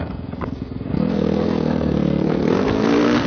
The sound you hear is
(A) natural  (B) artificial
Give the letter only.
B